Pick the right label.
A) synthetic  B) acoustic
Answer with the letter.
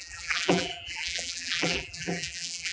A